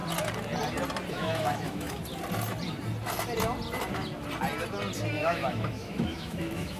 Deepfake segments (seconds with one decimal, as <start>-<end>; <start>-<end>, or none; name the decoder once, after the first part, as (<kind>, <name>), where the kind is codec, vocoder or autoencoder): 1.1-2.0 (autoencoder, DAC-VAE); 5.2-6.8